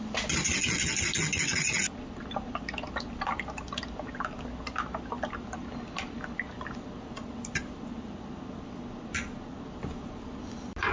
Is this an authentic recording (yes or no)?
yes